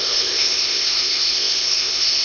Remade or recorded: remade